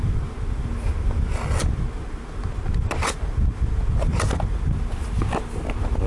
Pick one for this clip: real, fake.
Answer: real